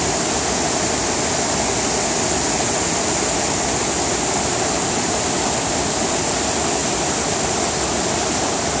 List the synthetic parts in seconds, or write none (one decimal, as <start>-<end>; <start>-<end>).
none